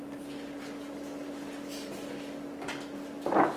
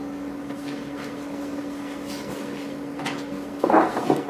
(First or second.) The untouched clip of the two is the first